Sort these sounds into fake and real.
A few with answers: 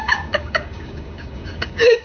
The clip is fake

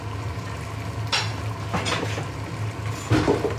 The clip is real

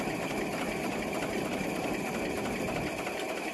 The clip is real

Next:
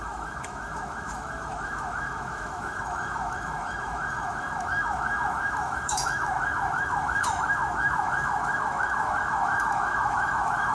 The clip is fake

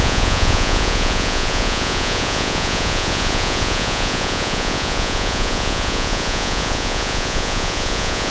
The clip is fake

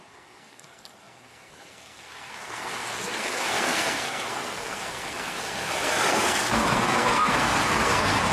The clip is fake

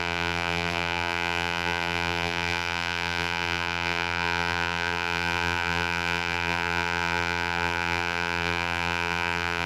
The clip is fake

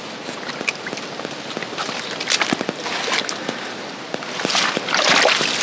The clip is real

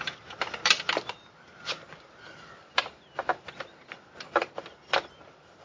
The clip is fake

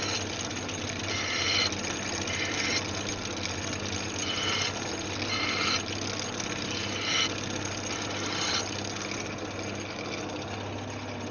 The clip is real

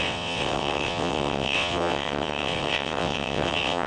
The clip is fake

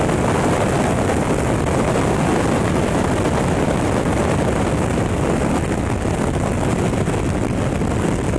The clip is real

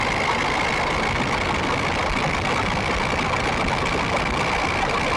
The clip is real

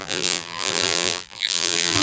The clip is fake